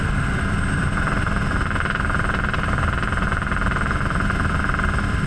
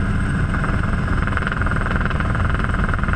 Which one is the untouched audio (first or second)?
first